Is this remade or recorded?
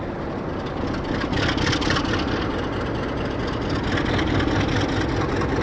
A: recorded